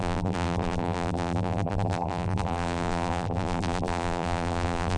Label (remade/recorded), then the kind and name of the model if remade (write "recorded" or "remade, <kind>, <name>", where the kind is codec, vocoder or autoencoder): remade, vocoder, BigVGAN v2